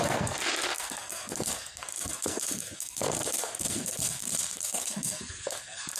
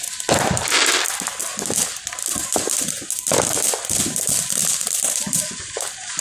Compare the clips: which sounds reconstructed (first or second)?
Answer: first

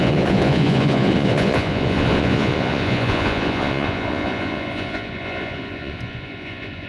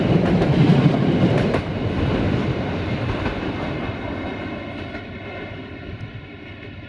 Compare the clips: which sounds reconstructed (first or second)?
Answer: first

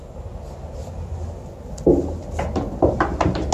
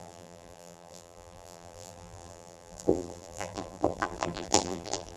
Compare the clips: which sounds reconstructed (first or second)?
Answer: second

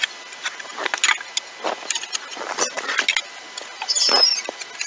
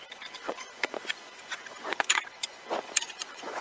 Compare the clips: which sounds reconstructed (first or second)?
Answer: second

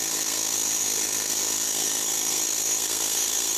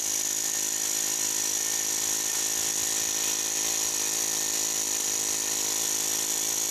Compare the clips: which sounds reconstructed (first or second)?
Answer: first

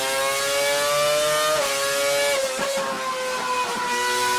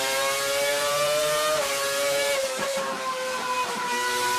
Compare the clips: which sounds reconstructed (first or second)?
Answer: second